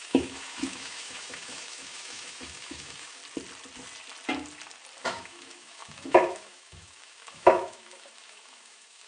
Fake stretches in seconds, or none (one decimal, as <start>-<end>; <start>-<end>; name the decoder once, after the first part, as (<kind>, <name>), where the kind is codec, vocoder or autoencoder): 0.0-3.2 (autoencoder, DAC-VAE); 5.0-9.1